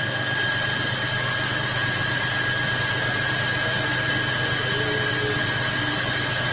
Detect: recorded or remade recorded